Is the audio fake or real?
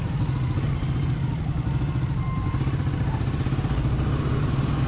real